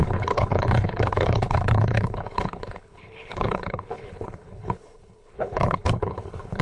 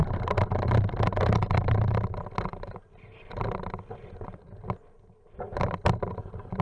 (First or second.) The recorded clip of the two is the second